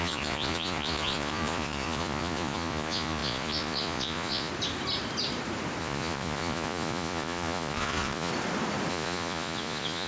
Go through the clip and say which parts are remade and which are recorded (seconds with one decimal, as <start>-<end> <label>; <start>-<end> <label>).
0.0-4.5 remade; 4.5-5.8 recorded; 5.8-8.3 remade; 8.3-8.9 recorded; 8.9-10.1 remade